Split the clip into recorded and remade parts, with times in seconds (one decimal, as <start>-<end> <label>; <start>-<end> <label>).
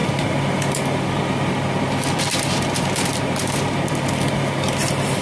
0.0-5.2 remade